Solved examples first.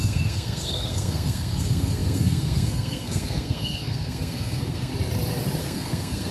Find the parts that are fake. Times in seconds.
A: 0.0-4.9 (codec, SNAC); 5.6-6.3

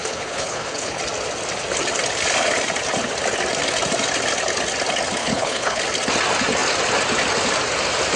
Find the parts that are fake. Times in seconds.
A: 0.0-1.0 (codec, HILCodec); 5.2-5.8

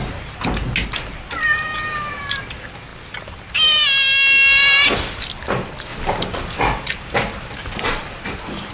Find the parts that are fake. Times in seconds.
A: none

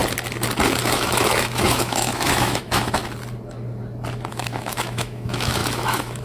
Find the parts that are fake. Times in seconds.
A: 0.8-3.0 (autoencoder, DAC-VAE); 4.3-6.2

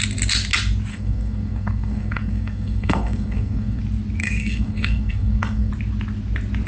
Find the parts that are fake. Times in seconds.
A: 0.9-3.8 (codec, SNAC); 4.2-5.7

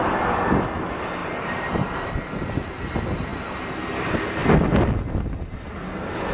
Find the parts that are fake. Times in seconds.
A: none

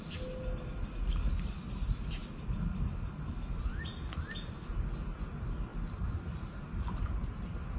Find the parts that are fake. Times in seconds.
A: none